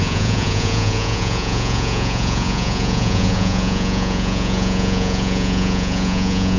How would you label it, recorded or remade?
remade